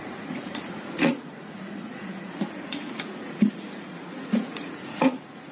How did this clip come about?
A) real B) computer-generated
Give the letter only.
B